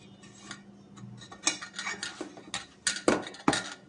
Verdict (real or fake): real